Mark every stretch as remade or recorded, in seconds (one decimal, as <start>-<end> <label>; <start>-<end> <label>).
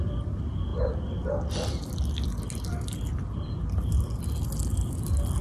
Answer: 0.0-5.4 recorded